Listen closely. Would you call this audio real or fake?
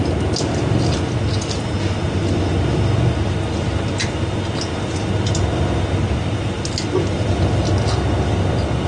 real